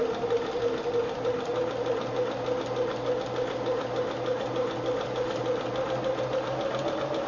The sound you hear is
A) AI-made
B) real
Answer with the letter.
B